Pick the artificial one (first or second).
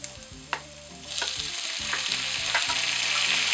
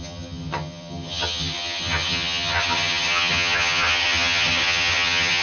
second